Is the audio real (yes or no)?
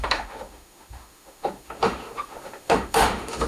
no